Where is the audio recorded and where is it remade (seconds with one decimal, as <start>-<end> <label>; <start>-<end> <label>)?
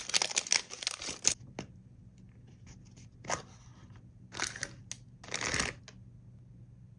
0.0-7.0 recorded